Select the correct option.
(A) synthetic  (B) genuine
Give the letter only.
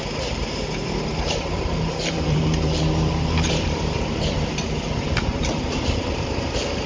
A